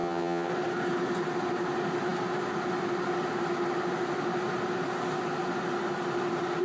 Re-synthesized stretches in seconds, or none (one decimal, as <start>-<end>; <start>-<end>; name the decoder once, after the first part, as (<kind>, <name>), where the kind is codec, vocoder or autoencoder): 0.0-0.5 (vocoder, WaveNeXt)

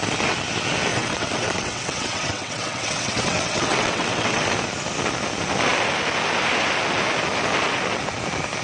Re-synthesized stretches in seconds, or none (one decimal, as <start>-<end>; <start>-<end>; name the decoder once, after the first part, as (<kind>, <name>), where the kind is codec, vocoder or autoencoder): 0.9-4.4 (vocoder, WaveNeXt)